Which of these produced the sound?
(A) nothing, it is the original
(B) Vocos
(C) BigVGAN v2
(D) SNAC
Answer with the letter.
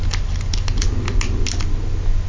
A